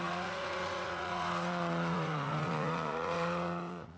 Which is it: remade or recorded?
remade